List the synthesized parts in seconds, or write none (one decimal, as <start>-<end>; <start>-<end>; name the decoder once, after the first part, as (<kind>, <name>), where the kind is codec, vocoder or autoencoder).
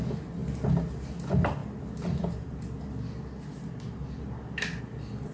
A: none